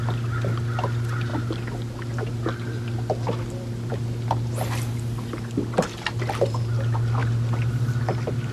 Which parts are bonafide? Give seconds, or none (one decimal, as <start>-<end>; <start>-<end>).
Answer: 0.0-8.5